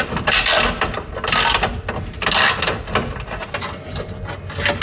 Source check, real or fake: real